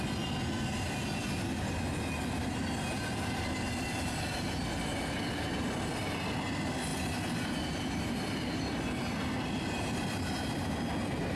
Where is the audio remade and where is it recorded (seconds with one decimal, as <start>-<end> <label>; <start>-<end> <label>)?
0.0-11.4 recorded